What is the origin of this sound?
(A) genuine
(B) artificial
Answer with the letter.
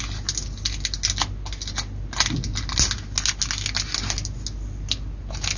A